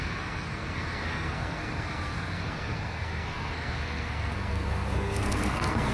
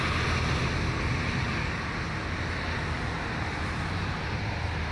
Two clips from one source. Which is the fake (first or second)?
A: first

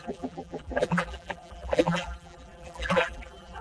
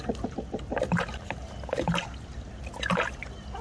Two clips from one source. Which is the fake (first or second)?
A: first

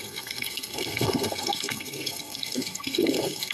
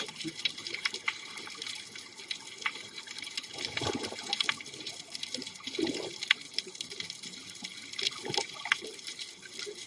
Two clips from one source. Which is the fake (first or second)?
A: first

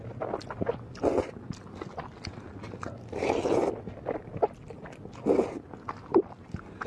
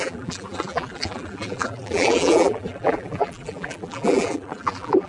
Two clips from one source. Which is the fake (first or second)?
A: second